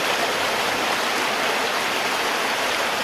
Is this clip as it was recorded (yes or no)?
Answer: yes